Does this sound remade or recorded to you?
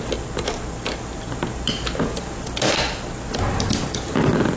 recorded